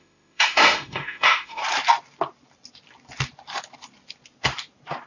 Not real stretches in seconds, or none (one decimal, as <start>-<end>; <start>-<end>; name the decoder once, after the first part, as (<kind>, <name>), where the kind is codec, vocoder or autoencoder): 0.0-1.6 (autoencoder, DAC-VAE)

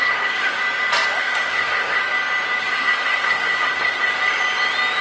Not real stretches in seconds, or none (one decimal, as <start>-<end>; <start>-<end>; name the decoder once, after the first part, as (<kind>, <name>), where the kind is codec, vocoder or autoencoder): 0.0-0.6 (codec, SNAC); 1.2-2.0; 2.6-4.1